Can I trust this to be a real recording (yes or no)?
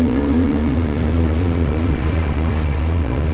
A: no